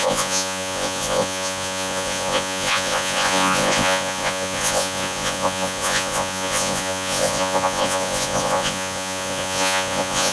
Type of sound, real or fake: fake